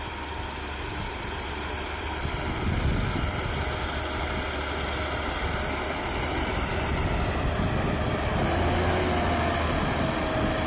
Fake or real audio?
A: real